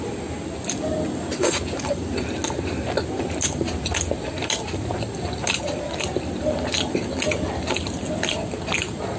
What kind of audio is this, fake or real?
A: real